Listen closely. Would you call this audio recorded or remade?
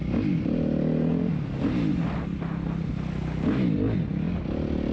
recorded